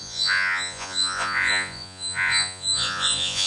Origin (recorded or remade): remade